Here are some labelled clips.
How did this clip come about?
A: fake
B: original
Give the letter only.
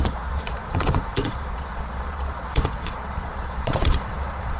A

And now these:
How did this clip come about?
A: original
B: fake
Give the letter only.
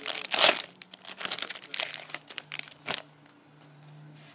A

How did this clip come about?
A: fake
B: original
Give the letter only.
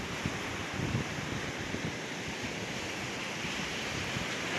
B